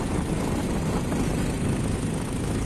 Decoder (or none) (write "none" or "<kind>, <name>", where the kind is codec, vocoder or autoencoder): none